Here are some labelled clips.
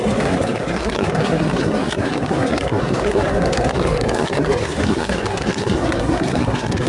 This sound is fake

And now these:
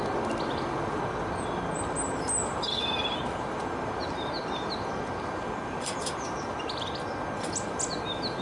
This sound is real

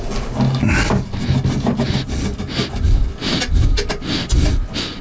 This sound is real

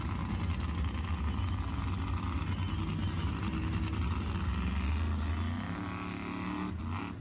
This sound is real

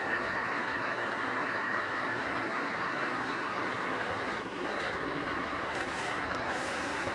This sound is fake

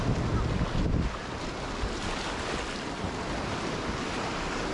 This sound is real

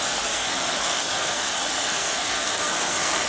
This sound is fake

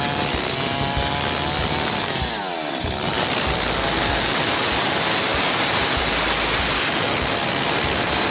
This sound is real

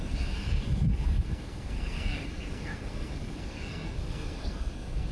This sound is fake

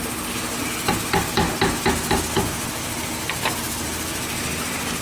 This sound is real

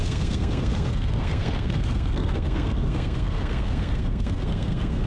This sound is fake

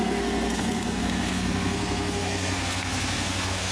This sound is fake